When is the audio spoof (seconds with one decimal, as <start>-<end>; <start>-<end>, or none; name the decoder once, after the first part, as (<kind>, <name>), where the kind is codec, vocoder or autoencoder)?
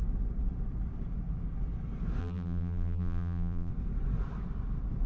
2.2-3.7 (vocoder, BigVGAN v2)